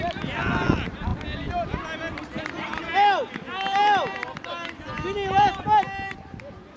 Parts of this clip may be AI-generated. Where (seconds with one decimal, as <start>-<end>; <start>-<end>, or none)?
none